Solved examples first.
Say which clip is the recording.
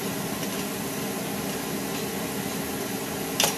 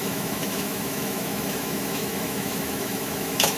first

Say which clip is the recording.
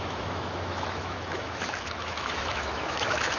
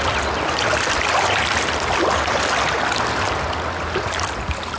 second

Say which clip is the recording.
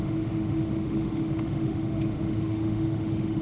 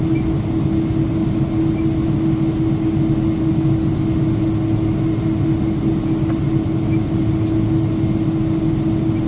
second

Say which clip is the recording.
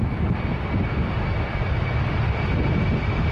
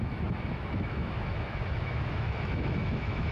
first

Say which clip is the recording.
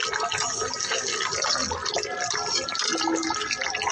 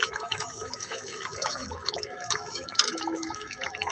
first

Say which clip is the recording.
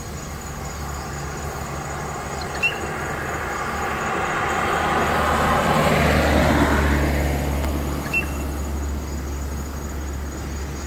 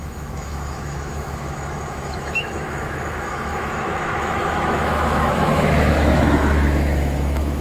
first